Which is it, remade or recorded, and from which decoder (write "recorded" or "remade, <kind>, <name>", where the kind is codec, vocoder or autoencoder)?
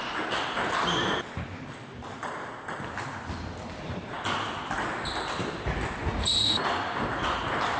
remade, vocoder, BigVGAN v2